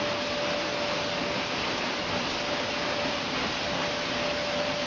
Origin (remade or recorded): recorded